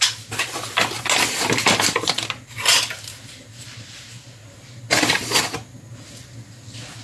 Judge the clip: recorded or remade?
recorded